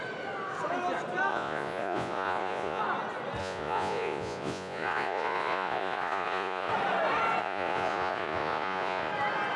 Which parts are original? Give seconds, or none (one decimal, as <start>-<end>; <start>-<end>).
0.0-1.3; 2.8-3.4; 6.7-7.4; 9.1-9.6